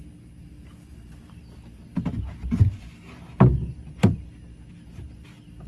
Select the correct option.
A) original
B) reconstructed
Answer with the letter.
A